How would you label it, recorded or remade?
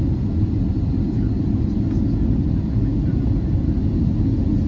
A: recorded